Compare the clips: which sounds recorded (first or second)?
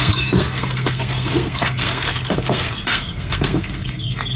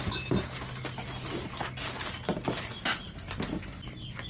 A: second